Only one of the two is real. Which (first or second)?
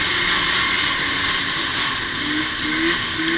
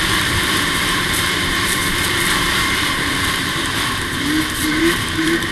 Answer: first